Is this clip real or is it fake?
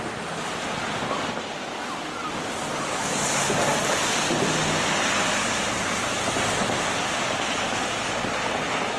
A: real